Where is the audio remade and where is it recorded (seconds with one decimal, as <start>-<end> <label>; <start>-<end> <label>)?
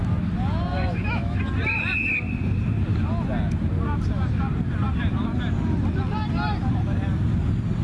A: 0.0-0.7 recorded; 0.7-1.4 remade; 1.4-7.8 recorded